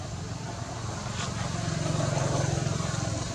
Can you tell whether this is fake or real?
real